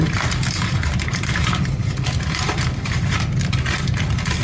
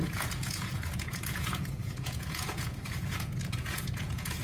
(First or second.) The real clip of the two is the first